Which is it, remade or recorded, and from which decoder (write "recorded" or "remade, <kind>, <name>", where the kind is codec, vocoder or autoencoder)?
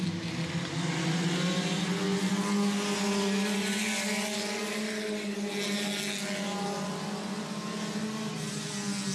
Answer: recorded